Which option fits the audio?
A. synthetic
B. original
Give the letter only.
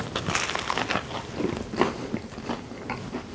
B